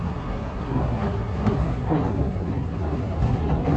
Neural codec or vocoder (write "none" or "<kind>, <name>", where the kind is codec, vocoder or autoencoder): codec, SNAC